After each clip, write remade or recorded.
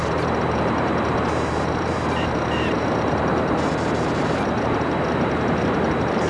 remade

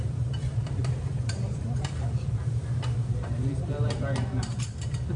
remade